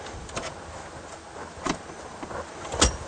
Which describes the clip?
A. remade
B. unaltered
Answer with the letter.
B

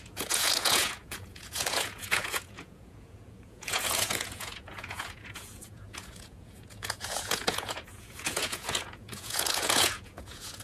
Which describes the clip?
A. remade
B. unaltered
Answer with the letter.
A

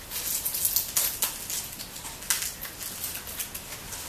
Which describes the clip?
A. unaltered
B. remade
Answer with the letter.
A